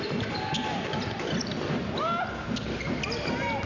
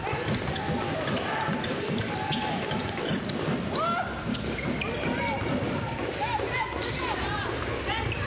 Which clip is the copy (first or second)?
second